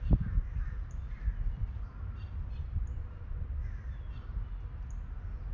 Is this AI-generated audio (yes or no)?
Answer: no